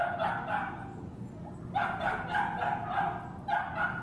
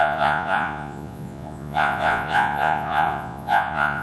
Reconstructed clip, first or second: second